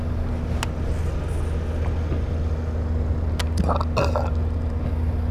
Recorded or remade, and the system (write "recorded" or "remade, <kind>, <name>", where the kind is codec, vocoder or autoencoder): recorded